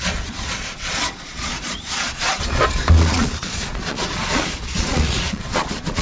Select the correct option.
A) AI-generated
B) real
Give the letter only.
A